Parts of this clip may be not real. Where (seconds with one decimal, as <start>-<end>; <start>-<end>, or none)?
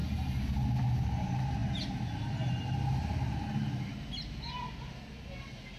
none